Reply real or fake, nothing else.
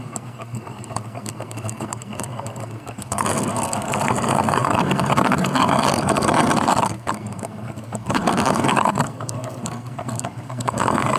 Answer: fake